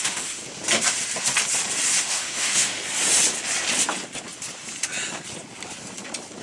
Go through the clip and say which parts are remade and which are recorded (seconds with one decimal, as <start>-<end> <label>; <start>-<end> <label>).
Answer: 0.0-0.4 remade; 0.4-2.0 recorded; 2.0-2.8 remade; 2.8-6.4 recorded